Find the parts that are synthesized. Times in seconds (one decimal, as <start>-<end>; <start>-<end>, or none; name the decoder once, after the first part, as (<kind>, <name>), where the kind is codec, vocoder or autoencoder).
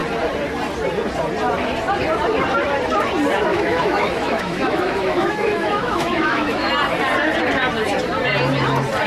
3.5-6.7 (autoencoder, DAC-VAE)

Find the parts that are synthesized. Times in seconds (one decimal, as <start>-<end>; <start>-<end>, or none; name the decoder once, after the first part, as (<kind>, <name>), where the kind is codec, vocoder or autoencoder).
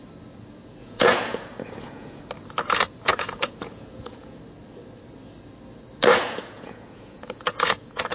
0.8-2.2 (vocoder, Vocos); 3.1-4.4; 6.1-8.1